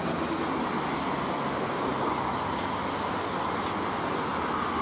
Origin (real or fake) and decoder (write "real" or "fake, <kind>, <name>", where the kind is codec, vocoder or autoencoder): real